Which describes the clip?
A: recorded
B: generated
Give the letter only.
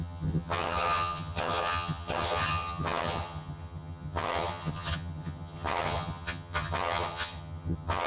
B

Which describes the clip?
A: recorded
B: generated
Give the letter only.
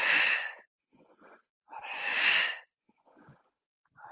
B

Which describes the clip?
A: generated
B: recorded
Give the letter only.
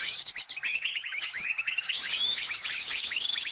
A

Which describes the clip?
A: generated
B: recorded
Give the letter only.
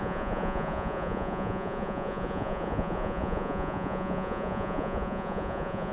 A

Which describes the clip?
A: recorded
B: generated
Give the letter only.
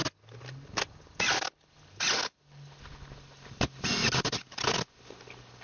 A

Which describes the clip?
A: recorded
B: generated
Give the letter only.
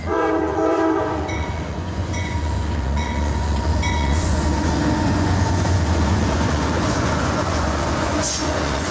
B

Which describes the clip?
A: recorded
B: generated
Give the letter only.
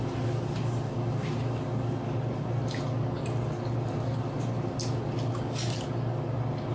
A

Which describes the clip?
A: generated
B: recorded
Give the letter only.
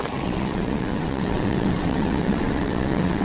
A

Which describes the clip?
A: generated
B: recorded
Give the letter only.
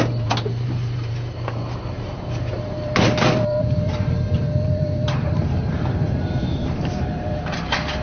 A